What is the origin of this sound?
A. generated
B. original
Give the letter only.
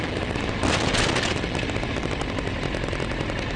B